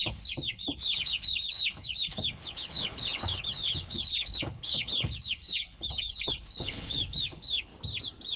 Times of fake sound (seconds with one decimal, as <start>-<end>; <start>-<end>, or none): 0.0-7.7